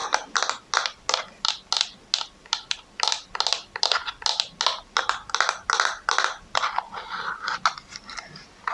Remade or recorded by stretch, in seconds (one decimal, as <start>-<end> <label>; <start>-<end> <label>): 0.0-8.7 recorded